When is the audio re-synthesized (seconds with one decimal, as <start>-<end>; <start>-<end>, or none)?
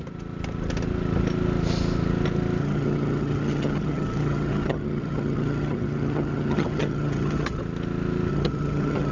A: 2.6-7.6; 8.3-9.1